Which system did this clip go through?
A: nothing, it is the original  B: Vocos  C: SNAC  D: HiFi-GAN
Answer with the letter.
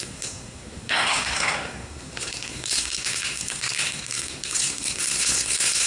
C